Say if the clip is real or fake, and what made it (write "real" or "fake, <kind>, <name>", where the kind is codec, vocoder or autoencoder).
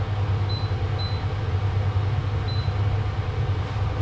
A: real